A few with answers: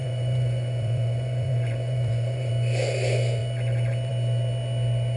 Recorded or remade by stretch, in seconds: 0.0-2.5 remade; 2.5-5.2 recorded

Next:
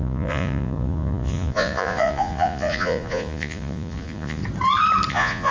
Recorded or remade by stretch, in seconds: 0.0-4.4 remade; 4.4-5.1 recorded; 5.1-5.5 remade

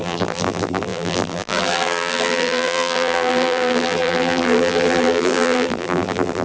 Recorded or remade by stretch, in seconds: 0.0-6.4 remade

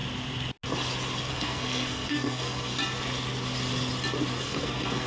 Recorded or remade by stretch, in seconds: 0.0-1.3 recorded; 1.3-2.7 remade; 2.7-4.4 recorded; 4.4-5.1 remade

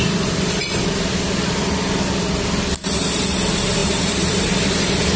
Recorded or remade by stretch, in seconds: 0.0-3.8 recorded; 3.8-5.2 remade